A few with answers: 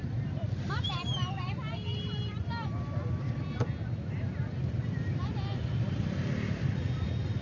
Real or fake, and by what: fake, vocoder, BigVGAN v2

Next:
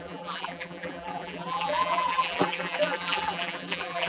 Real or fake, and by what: fake, vocoder, BigVGAN v2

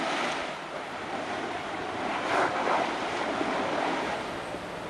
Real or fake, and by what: fake, vocoder, BigVGAN v2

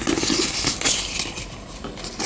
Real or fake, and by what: real